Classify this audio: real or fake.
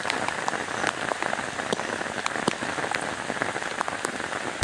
real